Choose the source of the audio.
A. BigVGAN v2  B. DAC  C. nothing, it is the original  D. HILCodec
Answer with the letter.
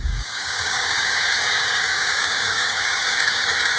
B